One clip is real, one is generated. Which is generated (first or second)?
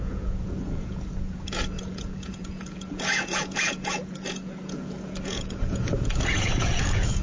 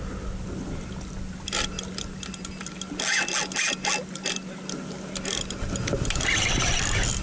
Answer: first